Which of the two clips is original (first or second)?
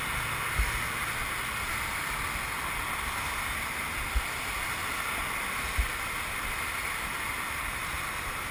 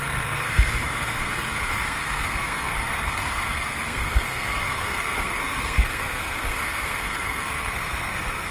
first